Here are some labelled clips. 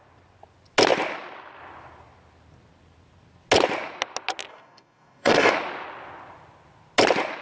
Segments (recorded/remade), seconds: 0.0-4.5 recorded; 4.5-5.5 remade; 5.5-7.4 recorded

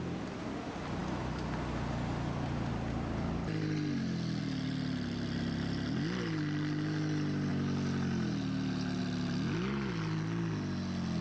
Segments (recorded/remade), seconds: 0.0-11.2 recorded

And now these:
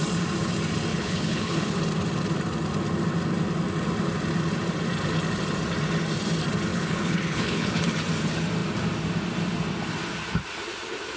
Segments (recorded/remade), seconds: 0.0-0.9 recorded; 0.9-1.8 remade; 1.8-6.7 recorded; 6.7-7.8 remade; 7.8-11.2 recorded

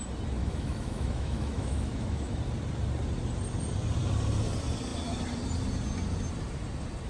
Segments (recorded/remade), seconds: 0.0-0.4 recorded; 0.4-2.4 remade; 2.4-7.1 recorded